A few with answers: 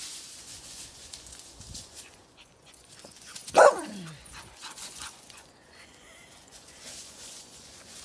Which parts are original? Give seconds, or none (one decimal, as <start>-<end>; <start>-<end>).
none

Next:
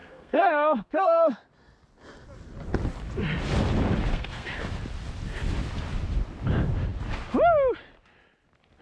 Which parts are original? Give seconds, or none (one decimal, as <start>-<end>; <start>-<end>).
1.5-4.1; 4.6-8.8

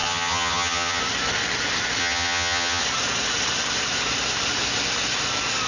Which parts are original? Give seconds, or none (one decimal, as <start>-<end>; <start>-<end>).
1.0-2.0; 2.8-5.7